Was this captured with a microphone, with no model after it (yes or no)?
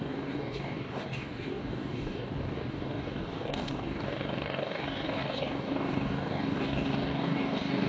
no